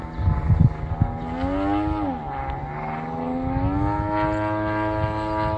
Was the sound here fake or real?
real